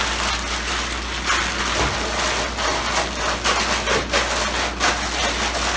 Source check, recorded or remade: recorded